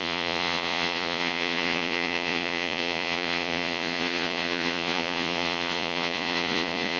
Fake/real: fake